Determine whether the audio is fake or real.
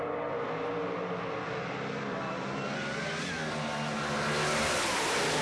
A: real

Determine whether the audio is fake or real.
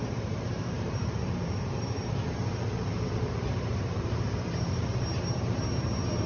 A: fake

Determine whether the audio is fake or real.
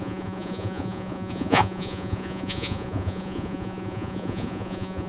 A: fake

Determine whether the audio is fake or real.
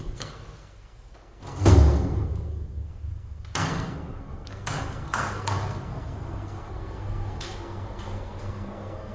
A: fake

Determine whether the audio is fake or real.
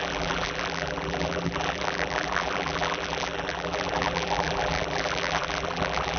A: fake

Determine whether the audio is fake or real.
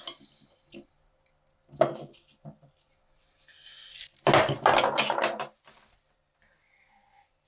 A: real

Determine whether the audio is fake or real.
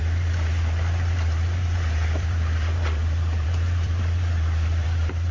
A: fake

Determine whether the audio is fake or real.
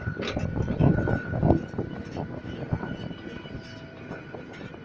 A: real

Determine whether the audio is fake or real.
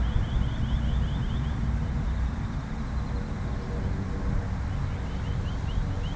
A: fake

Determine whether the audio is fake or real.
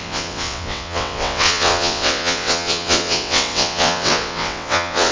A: fake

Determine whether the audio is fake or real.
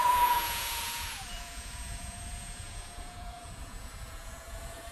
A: fake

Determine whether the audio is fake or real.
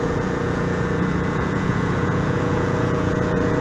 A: fake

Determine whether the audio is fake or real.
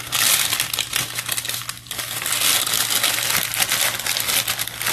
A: real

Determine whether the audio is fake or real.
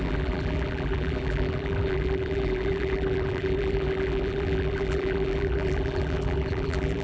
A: fake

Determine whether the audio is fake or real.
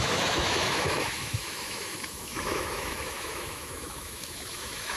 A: fake